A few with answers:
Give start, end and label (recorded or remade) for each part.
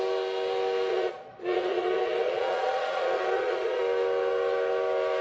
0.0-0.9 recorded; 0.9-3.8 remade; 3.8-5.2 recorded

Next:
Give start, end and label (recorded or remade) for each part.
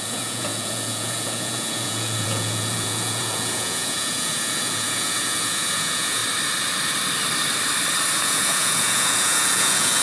0.0-6.2 remade; 6.2-8.2 recorded; 8.2-10.0 remade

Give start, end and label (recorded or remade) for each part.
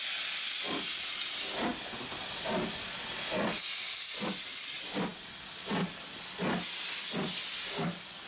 0.0-8.3 recorded